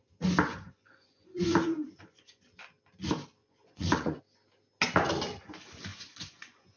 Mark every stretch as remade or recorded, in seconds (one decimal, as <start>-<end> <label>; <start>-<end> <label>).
0.0-0.5 recorded; 0.5-2.4 remade; 2.4-3.4 recorded; 3.4-4.2 remade; 4.2-5.9 recorded; 5.9-6.8 remade